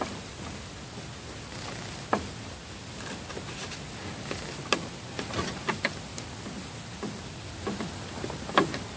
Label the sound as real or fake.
real